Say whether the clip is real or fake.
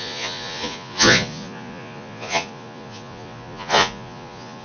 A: fake